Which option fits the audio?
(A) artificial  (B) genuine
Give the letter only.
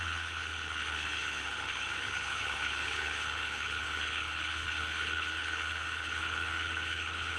A